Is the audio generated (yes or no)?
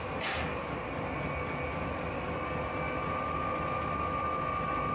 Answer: no